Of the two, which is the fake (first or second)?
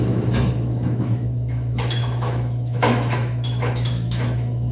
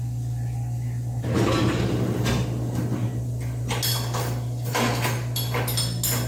first